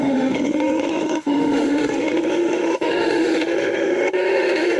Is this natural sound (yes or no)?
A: no